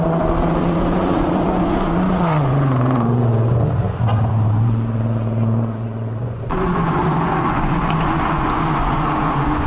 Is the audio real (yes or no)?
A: no